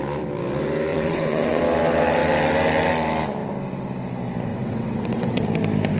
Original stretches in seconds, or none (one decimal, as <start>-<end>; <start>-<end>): 0.0-0.9; 1.6-4.5; 5.4-6.0